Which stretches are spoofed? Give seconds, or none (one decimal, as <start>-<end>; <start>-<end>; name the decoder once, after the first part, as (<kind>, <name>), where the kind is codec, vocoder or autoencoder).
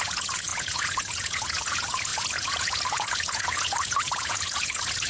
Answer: 0.0-5.1 (vocoder, Vocos)